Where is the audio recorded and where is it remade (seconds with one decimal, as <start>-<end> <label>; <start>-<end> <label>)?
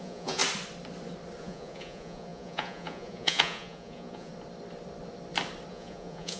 0.0-0.4 remade; 0.4-1.4 recorded; 1.4-4.3 remade; 4.3-5.7 recorded; 5.7-6.4 remade